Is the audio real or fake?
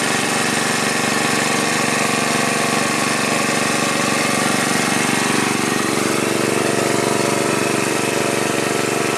real